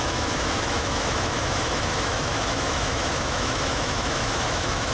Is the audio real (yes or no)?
no